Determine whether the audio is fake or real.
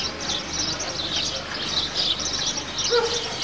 real